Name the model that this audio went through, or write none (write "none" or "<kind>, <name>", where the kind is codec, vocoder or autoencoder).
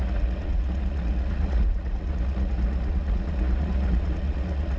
vocoder, Vocos